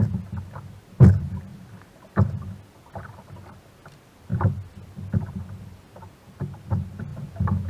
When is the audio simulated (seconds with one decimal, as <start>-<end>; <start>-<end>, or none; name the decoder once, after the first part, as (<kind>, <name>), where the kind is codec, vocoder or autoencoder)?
none